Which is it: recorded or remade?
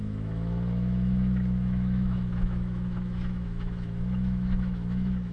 remade